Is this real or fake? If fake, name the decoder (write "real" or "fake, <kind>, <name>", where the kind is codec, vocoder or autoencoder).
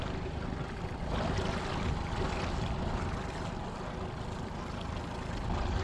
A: real